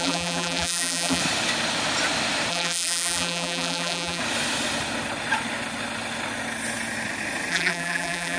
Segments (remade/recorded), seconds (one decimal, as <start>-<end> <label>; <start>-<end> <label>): 0.0-1.2 remade; 1.2-2.5 recorded; 2.5-4.2 remade; 4.2-7.5 recorded; 7.5-8.4 remade

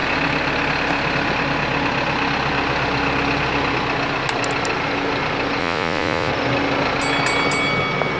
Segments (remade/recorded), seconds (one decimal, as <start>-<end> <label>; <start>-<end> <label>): 0.0-5.6 recorded; 5.6-6.3 remade; 6.3-8.2 recorded

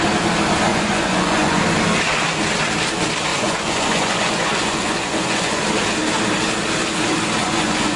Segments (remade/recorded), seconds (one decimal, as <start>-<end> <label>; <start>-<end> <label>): 0.0-0.7 recorded; 0.7-1.6 remade; 1.6-3.3 recorded; 3.3-5.6 remade; 5.6-7.4 recorded; 7.4-8.0 remade

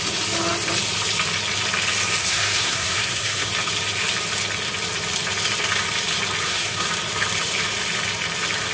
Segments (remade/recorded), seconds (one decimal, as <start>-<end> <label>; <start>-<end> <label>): 0.0-2.2 recorded; 2.2-3.5 remade; 3.5-6.4 recorded; 6.4-6.9 remade; 6.9-8.7 recorded